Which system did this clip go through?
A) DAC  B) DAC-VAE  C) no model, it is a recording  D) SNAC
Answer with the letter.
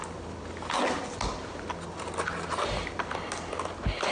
C